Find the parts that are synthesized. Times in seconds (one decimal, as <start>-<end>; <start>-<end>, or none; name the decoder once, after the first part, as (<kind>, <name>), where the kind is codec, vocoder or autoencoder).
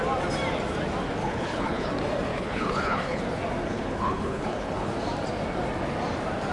1.2-1.9 (codec, HILCodec); 2.3-3.2; 3.7-4.9